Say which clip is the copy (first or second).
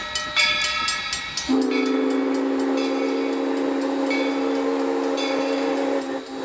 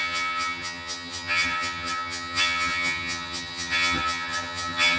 second